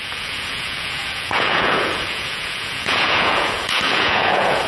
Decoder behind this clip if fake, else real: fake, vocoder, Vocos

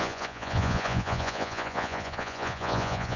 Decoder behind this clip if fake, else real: fake, vocoder, Vocos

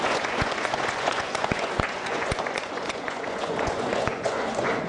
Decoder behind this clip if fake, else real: fake, vocoder, Vocos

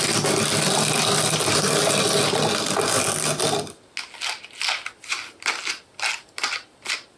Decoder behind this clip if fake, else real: real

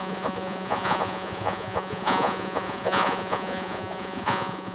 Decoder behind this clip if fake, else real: fake, vocoder, Vocos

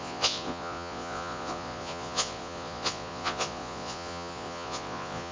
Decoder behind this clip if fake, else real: fake, vocoder, Vocos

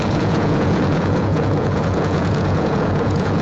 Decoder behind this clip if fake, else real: fake, vocoder, Vocos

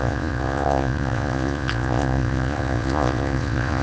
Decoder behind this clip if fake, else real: fake, vocoder, Vocos